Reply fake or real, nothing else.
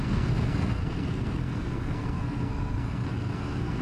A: fake